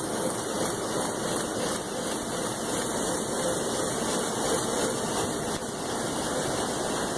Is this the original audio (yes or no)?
yes